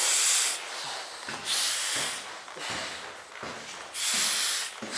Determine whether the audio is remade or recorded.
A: recorded